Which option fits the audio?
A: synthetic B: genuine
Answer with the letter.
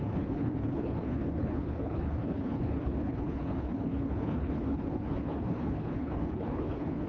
A